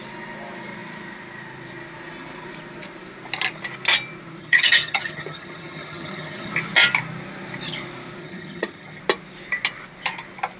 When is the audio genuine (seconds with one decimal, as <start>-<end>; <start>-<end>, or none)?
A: 0.0-4.4; 6.5-8.2; 9.0-10.6